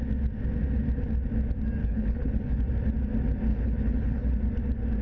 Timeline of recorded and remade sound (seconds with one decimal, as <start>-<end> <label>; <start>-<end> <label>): 0.0-1.8 recorded; 1.8-2.6 remade; 2.6-3.5 recorded; 3.5-4.3 remade; 4.3-5.0 recorded